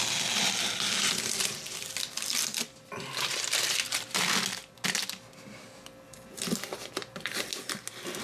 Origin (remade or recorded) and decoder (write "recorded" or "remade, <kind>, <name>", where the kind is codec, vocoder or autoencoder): recorded